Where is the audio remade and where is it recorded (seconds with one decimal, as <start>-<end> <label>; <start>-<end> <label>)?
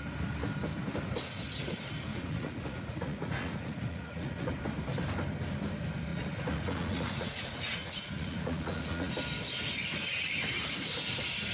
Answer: 0.0-2.1 recorded; 2.1-4.5 remade; 4.5-6.1 recorded; 6.1-9.1 remade; 9.1-11.5 recorded